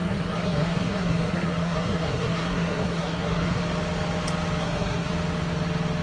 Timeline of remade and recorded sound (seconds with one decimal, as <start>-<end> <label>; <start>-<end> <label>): 0.0-3.6 remade; 3.6-4.6 recorded; 4.6-5.1 remade; 5.1-6.0 recorded